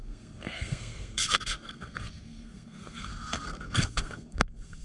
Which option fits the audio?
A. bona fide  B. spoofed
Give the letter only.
B